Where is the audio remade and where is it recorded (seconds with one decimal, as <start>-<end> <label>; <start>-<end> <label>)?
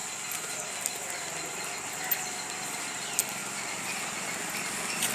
0.0-5.1 recorded